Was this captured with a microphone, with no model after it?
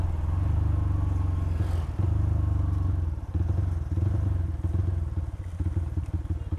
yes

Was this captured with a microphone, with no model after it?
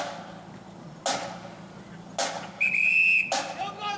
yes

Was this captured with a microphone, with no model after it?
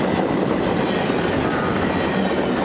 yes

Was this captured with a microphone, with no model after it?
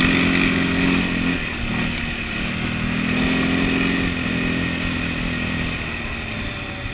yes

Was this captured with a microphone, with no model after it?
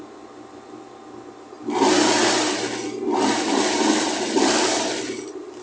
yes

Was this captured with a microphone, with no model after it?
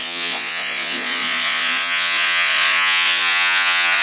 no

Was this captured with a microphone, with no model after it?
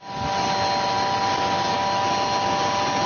yes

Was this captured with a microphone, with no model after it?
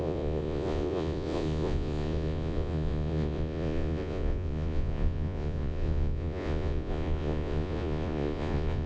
no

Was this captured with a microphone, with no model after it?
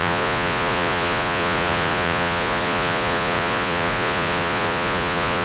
no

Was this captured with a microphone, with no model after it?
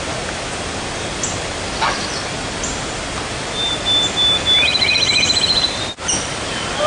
yes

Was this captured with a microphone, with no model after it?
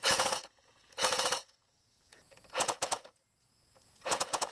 no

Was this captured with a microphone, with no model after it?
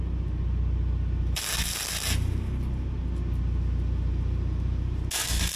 yes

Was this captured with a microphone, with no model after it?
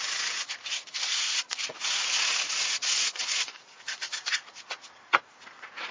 no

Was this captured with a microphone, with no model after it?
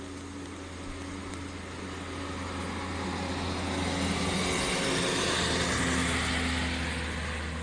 yes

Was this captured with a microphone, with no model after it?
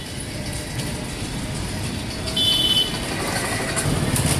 yes